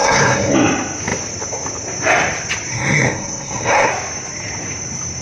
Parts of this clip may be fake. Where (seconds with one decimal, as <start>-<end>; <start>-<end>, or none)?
0.0-0.5; 2.7-3.9